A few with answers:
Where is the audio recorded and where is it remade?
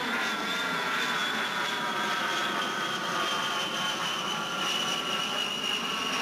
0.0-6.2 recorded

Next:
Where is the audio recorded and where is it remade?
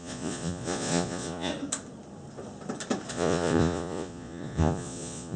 0.0-1.5 remade; 1.5-3.1 recorded; 3.1-5.4 remade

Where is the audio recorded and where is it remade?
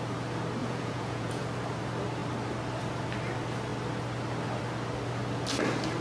0.0-0.6 recorded; 0.6-1.4 remade; 1.4-6.0 recorded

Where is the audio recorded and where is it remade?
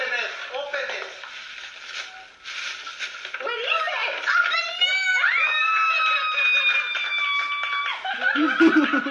0.0-9.1 recorded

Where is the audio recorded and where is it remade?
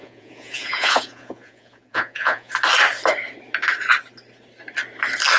0.0-2.5 remade; 2.5-5.4 recorded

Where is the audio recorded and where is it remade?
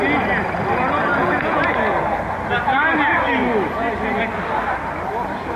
0.0-1.1 recorded; 1.1-1.7 remade; 1.7-5.6 recorded